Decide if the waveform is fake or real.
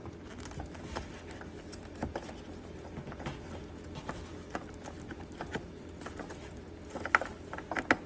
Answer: real